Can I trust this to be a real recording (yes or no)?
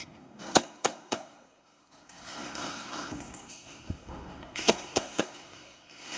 no